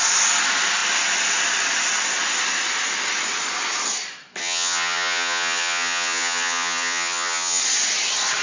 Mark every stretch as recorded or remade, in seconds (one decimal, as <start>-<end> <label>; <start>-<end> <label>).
0.0-4.4 recorded; 4.4-7.6 remade; 7.6-8.4 recorded